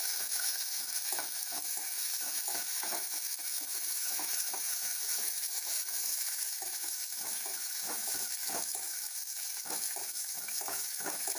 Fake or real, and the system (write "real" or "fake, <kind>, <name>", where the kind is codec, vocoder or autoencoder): fake, autoencoder, DAC-VAE